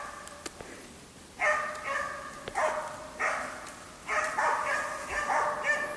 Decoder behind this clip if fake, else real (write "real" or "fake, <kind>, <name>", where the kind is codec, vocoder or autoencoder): real